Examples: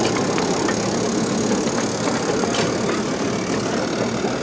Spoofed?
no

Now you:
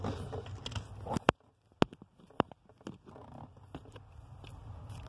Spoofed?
no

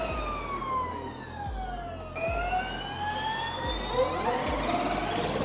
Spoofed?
no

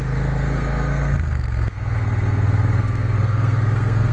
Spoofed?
yes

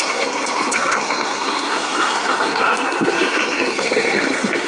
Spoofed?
yes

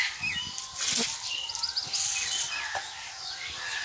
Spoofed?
no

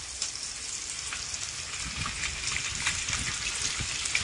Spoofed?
no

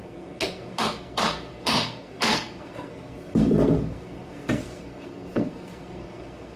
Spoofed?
yes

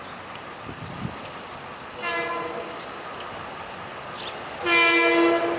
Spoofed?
no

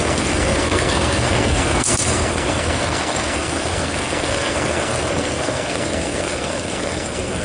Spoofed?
yes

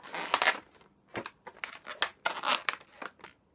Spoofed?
no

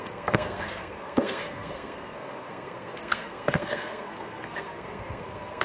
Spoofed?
yes